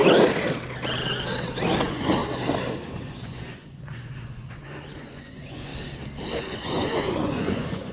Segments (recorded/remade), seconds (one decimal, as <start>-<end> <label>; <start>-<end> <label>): 0.0-1.8 recorded; 1.8-2.2 remade; 2.2-2.9 recorded; 2.9-5.7 remade; 5.7-6.4 recorded; 6.4-7.9 remade